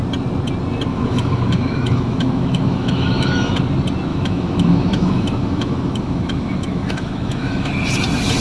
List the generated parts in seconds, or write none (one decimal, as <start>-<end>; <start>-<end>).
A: 0.9-3.6; 4.1-7.7